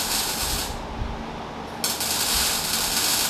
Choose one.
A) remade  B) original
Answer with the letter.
B